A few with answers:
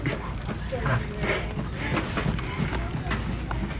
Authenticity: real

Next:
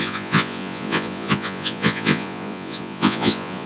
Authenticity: fake